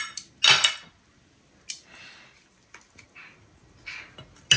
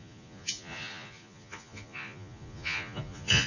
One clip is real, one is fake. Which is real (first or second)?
first